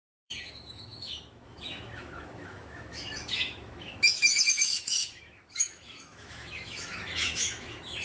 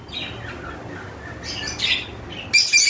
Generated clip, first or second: first